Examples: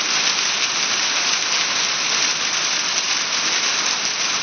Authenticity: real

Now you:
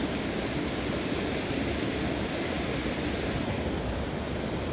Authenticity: real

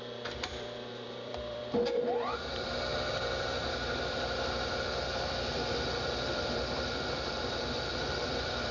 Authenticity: fake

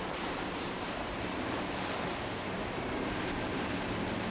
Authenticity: fake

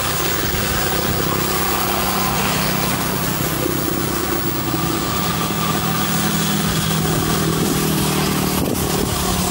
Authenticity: real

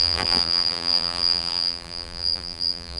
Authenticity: fake